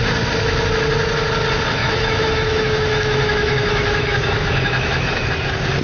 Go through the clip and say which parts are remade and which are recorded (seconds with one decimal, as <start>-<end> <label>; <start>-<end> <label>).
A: 0.0-1.8 recorded; 1.8-5.3 remade; 5.3-5.8 recorded